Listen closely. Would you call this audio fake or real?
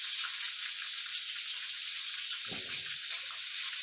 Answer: real